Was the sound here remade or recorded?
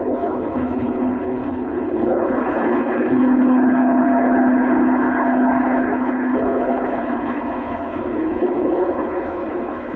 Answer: remade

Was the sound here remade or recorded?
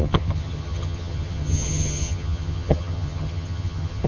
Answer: remade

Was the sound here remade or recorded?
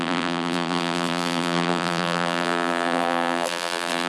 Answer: remade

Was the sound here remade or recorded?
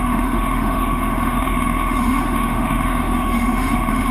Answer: remade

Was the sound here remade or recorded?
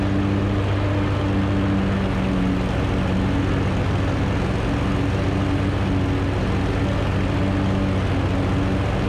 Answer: recorded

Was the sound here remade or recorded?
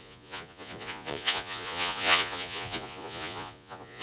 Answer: remade